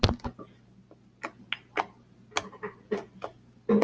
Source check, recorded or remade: recorded